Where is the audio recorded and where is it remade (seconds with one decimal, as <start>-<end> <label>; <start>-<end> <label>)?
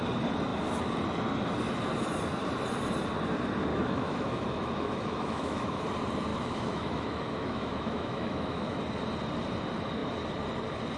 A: 0.0-3.7 recorded; 3.7-5.8 remade; 5.8-6.3 recorded; 6.3-8.8 remade; 8.8-11.0 recorded